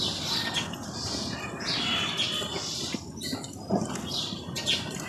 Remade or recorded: recorded